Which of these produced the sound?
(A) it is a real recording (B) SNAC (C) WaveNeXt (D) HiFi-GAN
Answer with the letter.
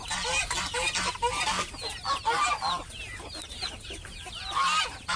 A